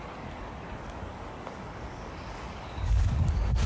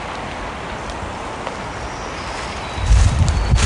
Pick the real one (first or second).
second